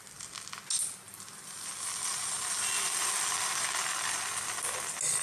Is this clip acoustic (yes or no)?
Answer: yes